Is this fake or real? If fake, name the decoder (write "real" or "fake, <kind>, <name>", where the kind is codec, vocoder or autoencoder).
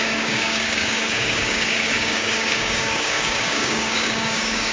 fake, codec, DAC